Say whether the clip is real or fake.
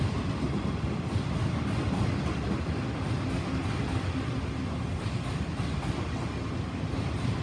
real